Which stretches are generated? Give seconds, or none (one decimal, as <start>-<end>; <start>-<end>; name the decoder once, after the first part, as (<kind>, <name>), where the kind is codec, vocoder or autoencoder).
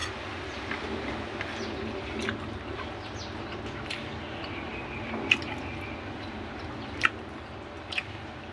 none